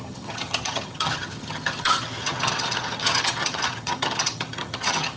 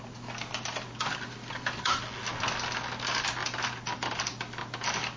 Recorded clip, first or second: second